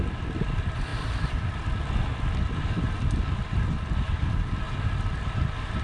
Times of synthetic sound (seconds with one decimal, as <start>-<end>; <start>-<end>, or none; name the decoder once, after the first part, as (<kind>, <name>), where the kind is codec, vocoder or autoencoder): 0.9-4.2 (vocoder, BigVGAN v2)